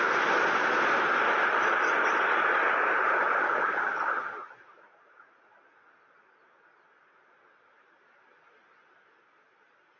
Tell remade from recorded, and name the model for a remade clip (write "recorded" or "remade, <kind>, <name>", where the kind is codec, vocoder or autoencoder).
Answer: recorded